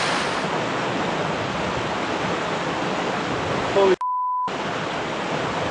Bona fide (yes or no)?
yes